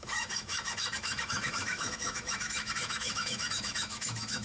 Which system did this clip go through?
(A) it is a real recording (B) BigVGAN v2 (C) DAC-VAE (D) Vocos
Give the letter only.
C